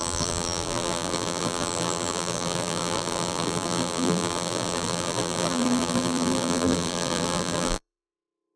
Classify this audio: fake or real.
fake